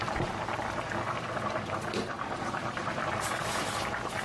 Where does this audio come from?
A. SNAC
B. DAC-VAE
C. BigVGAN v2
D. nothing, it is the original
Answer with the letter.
C